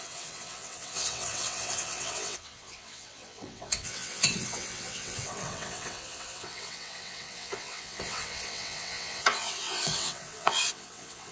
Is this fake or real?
fake